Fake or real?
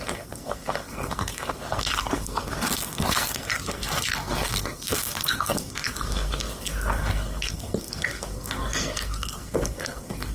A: fake